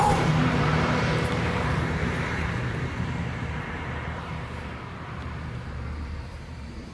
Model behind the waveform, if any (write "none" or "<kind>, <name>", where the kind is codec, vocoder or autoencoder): vocoder, BigVGAN v2